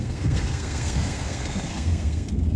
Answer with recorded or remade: remade